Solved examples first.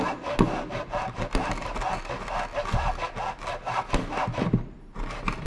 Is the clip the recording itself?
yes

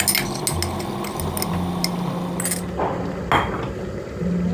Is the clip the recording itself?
yes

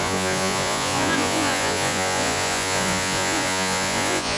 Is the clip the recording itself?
no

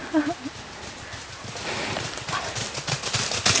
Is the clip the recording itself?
yes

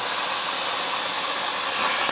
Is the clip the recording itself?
yes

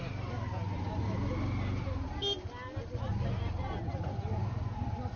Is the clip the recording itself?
yes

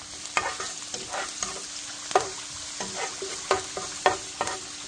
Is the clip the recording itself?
yes